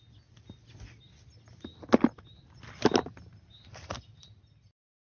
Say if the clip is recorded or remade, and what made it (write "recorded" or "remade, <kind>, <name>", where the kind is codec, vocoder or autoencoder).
recorded